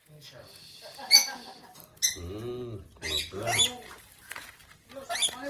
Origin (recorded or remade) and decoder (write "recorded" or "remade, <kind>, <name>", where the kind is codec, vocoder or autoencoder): recorded